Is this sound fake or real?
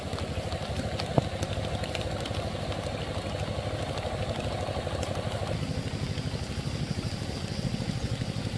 real